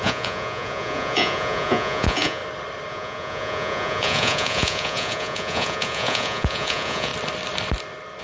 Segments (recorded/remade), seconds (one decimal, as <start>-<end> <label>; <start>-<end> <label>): 0.0-2.4 remade; 2.4-2.9 recorded; 2.9-7.1 remade; 7.1-8.2 recorded

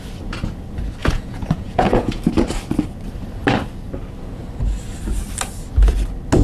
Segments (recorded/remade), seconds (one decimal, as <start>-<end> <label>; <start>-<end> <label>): 0.0-1.0 recorded; 1.0-2.2 remade; 2.2-6.4 recorded

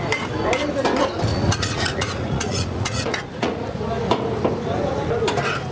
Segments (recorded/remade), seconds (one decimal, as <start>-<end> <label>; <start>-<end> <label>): 0.0-1.3 recorded; 1.3-3.8 remade; 3.8-5.7 recorded

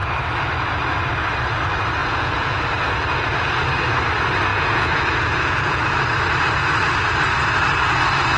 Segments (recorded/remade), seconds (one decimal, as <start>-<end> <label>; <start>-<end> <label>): 0.0-2.0 recorded; 2.0-2.6 remade; 2.6-4.5 recorded; 4.5-5.8 remade; 5.8-8.4 recorded